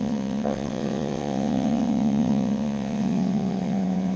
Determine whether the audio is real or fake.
fake